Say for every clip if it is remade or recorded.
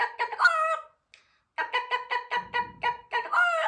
recorded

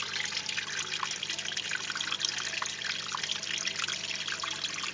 recorded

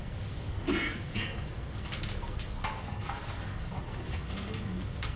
remade